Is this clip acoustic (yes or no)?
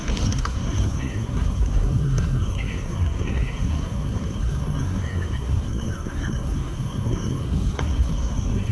no